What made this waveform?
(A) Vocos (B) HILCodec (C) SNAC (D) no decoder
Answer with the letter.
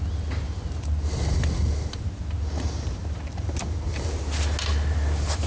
D